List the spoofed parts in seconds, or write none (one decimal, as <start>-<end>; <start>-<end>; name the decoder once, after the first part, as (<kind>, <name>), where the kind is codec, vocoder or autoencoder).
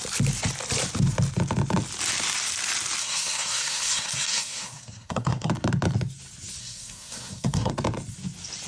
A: 3.0-5.5 (codec, SNAC); 6.6-7.7